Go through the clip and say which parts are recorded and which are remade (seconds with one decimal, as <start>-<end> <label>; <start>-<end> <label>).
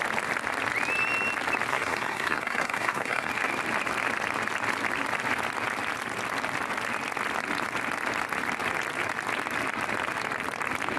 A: 0.0-1.7 recorded; 1.7-3.3 remade; 3.3-11.0 recorded